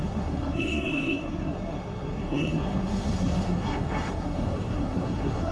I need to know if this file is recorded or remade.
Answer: remade